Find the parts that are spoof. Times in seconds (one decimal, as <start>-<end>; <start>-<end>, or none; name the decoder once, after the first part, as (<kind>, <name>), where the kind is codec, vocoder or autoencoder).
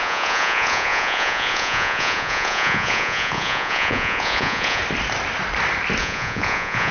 0.0-4.8 (vocoder, Vocos); 6.0-6.9